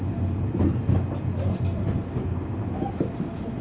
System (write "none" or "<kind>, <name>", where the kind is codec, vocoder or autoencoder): none